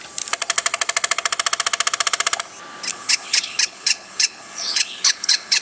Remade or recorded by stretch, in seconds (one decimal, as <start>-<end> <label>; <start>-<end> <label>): 0.0-2.9 recorded; 2.9-5.6 remade